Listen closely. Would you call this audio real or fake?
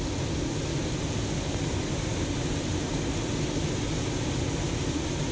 real